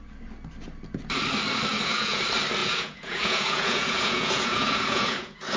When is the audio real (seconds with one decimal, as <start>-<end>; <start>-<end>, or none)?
0.0-1.7; 2.2-2.6